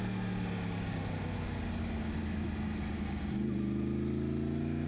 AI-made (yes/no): no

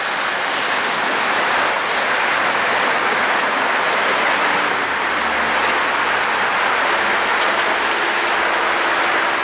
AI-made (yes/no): no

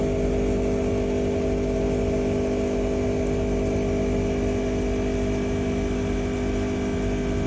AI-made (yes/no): no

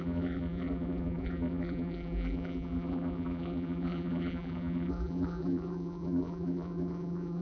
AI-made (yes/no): yes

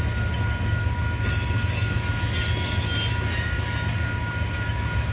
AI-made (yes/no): no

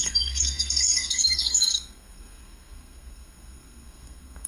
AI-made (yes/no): yes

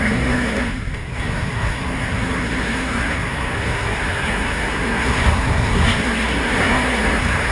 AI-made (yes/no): yes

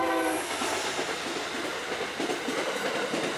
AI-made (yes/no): no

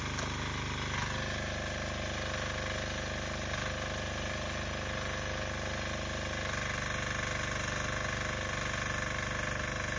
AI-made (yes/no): no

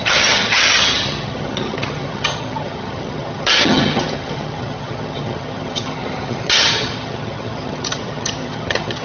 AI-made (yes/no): yes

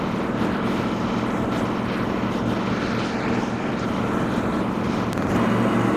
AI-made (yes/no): no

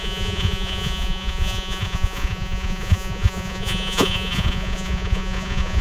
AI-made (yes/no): yes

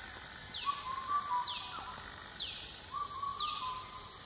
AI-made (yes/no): no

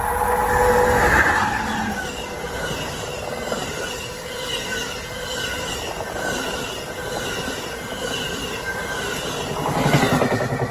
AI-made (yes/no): no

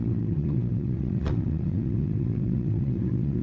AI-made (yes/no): yes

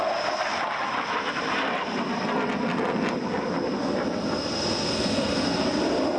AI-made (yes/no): no